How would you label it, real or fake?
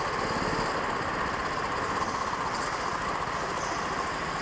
real